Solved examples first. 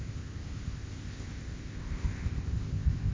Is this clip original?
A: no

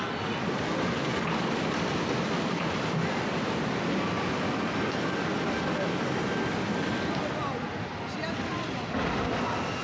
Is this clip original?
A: yes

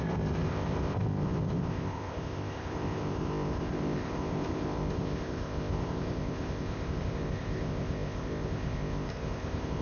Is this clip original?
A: no